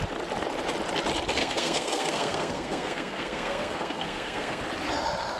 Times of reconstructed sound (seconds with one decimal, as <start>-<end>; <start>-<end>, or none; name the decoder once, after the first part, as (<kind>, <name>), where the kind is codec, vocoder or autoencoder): 1.4-4.6 (codec, SNAC)